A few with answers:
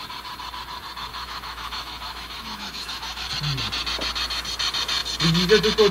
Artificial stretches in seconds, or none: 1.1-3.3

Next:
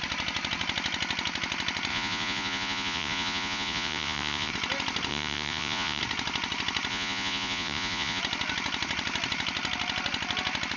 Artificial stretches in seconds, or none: 1.9-4.5; 5.1-6.0; 6.9-8.2